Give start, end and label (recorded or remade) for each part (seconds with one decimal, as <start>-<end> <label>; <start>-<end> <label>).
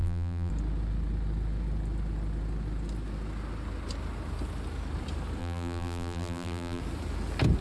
0.0-0.5 remade; 0.5-5.4 recorded; 5.4-6.8 remade; 6.8-7.6 recorded